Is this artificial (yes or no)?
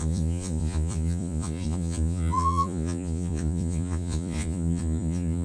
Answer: yes